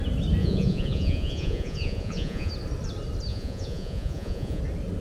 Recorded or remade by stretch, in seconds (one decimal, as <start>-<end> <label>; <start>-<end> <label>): 0.0-0.4 recorded; 0.4-2.5 remade; 2.5-3.3 recorded; 3.3-4.6 remade; 4.6-5.0 recorded